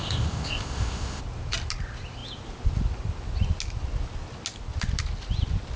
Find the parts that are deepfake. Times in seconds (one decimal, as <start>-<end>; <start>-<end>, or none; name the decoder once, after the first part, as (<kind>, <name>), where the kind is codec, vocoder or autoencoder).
0.0-1.2 (codec, ZipCodec)

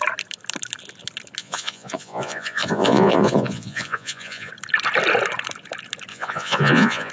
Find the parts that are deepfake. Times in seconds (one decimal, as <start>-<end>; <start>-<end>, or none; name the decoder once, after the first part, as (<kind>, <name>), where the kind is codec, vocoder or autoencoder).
1.4-4.5 (vocoder, Vocos); 6.1-7.1

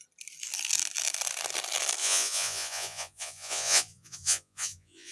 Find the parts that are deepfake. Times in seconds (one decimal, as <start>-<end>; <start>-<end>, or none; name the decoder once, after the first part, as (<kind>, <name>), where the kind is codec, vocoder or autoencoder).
2.0-5.1 (vocoder, Vocos)

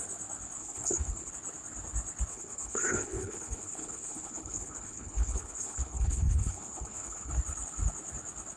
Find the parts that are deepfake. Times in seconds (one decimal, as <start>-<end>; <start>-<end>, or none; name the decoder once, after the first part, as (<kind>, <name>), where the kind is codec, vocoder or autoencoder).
0.6-1.3 (codec, HILCodec); 2.3-7.3

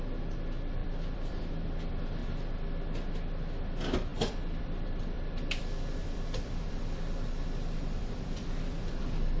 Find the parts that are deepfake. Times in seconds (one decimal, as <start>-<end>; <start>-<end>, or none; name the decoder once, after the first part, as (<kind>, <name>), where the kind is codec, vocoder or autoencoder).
0.8-1.4 (vocoder, BigVGAN v2); 4.1-9.0

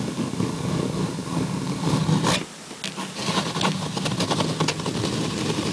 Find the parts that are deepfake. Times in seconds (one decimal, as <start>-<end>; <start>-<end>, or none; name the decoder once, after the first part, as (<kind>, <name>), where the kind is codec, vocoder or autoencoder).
0.0-2.0 (codec, DAC)

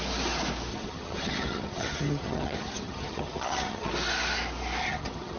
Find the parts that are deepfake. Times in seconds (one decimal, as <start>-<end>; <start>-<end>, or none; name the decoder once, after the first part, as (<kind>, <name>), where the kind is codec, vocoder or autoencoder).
0.7-3.9 (vocoder, HiFi-GAN); 4.8-5.4

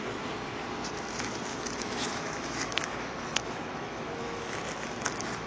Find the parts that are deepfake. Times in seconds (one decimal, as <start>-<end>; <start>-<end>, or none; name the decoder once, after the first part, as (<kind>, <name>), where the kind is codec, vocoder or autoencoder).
1.5-4.6 (autoencoder, DAC-VAE)